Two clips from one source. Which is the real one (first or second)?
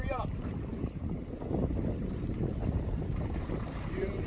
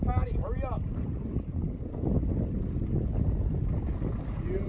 second